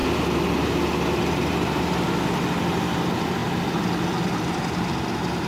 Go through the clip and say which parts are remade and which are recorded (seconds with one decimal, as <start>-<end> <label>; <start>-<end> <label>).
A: 0.0-3.0 recorded; 3.0-3.4 remade; 3.4-5.5 recorded

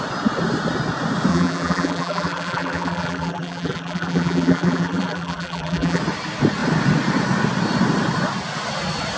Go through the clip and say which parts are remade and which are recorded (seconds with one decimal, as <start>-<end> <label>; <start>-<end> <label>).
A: 0.0-1.3 recorded; 1.3-6.0 remade; 6.0-9.2 recorded

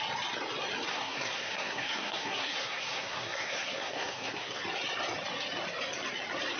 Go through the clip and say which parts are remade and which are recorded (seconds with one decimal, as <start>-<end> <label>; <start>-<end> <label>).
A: 0.0-0.9 recorded; 0.9-4.6 remade; 4.6-6.6 recorded

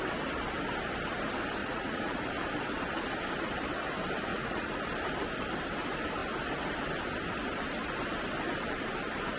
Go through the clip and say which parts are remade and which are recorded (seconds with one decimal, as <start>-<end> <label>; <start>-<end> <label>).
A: 0.0-1.6 recorded; 1.6-2.3 remade; 2.3-4.3 recorded; 4.3-4.8 remade; 4.8-9.4 recorded